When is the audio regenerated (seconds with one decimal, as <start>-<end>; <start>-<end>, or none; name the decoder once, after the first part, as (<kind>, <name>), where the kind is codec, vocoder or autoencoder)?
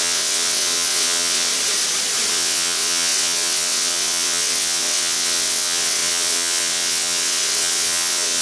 0.0-1.5 (vocoder, WaveNeXt); 2.3-8.4